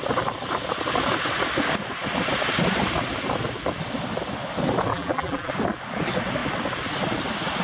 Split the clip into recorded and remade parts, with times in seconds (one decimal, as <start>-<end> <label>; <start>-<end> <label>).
0.0-4.9 recorded; 4.9-5.5 remade; 5.5-7.6 recorded